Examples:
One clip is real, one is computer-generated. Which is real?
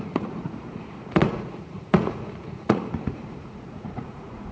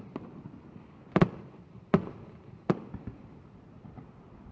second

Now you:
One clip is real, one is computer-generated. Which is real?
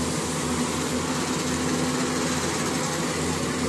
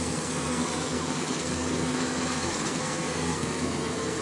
first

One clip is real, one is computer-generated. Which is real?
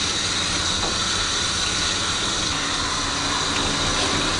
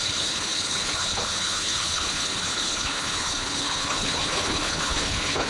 first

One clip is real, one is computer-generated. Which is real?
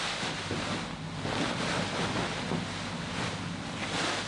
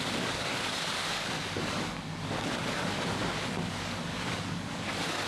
first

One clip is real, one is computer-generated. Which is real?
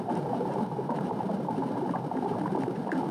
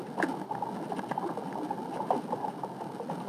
second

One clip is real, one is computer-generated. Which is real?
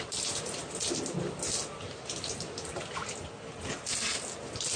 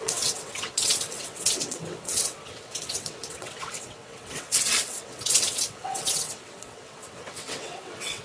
first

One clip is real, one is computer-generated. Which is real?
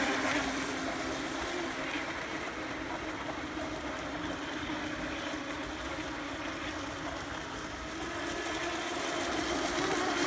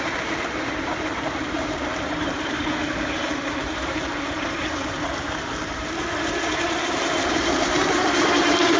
first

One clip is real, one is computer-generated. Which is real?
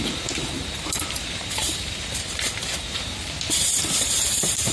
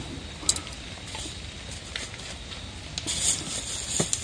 second